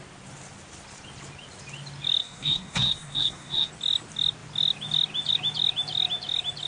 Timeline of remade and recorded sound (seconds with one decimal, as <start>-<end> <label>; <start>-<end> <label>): 0.0-2.2 recorded; 2.2-3.7 remade; 3.7-6.7 recorded

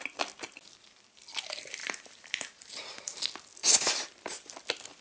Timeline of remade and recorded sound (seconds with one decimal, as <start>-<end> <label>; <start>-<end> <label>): 0.0-1.8 recorded; 1.8-3.2 remade; 3.2-3.6 recorded; 3.6-4.6 remade; 4.6-5.0 recorded

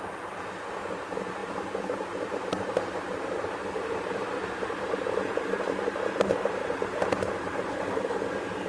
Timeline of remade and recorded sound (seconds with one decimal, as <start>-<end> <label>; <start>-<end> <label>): 0.0-1.4 recorded; 1.4-4.3 remade; 4.3-6.6 recorded; 6.6-8.1 remade; 8.1-8.7 recorded

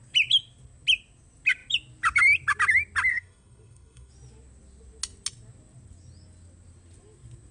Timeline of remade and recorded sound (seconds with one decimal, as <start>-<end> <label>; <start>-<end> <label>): 0.0-3.1 recorded; 3.1-4.1 remade; 4.1-7.5 recorded

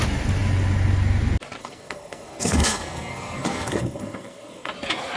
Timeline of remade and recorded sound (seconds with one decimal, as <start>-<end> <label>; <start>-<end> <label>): 0.0-1.6 recorded; 1.6-4.7 remade; 4.7-5.2 recorded

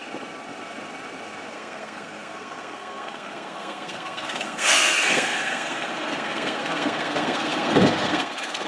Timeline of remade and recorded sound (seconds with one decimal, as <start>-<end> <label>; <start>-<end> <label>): 0.0-1.5 recorded; 1.5-8.7 remade